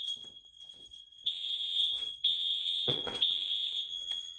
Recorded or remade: remade